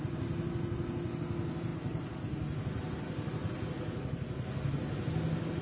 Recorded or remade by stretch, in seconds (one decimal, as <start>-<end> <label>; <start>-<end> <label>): 0.0-5.6 recorded